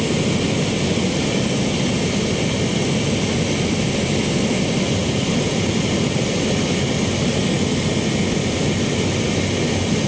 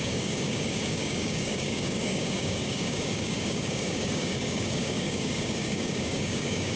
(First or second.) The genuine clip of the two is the first